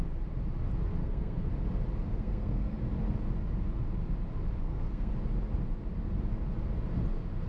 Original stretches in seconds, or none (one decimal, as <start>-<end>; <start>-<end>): 0.0-1.0; 1.5-2.1; 2.8-4.6; 5.1-7.5